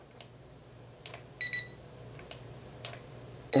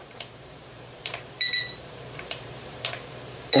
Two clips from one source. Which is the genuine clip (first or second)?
first